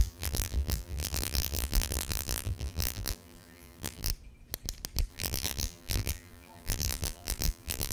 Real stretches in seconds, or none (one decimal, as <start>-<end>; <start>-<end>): 4.1-5.1